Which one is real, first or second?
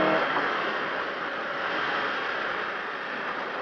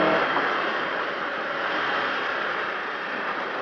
first